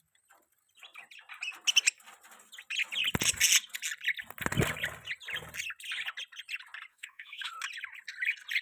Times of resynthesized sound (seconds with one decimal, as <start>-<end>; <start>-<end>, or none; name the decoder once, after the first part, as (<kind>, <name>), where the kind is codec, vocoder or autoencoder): 6.9-7.5 (autoencoder, DAC-VAE)